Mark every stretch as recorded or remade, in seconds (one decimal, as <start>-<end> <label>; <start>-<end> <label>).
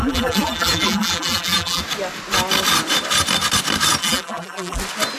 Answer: 0.0-1.8 remade; 1.8-4.0 recorded; 4.0-4.8 remade; 4.8-5.2 recorded